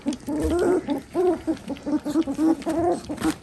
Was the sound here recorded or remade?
recorded